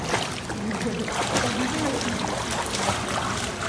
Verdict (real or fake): real